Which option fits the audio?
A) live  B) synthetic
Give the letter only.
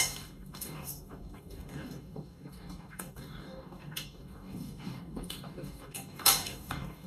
B